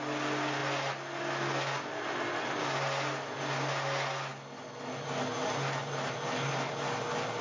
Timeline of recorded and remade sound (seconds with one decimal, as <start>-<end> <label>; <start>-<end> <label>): 0.0-7.4 recorded